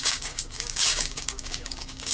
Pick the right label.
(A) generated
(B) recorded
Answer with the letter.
A